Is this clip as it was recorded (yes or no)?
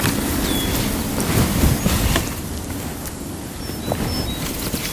yes